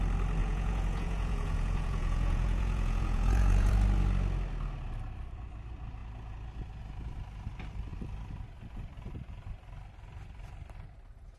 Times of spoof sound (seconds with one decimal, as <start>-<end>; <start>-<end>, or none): 0.4-3.7